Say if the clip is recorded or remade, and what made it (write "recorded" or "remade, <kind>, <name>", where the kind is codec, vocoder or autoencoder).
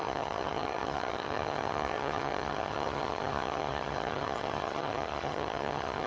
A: remade, vocoder, HiFi-GAN